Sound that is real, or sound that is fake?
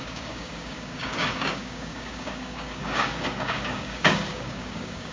fake